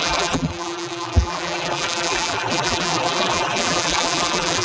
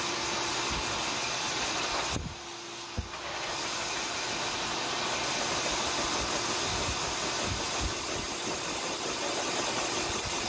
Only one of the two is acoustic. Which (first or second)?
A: second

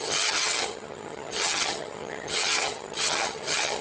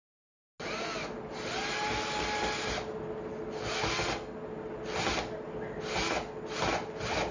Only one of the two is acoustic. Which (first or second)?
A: second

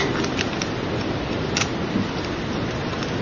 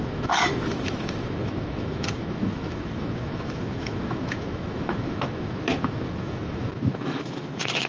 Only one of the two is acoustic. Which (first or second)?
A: first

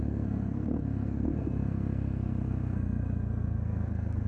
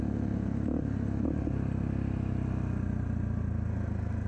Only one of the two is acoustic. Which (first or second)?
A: second